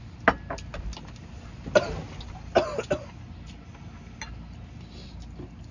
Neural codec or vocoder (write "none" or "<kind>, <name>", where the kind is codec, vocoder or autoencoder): none